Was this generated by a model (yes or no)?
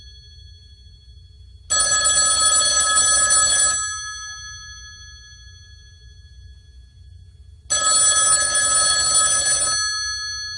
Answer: no